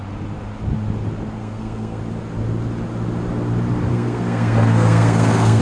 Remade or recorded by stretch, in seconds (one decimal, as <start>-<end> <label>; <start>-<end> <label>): 0.0-1.4 recorded; 1.4-2.0 remade; 2.0-3.9 recorded; 3.9-5.6 remade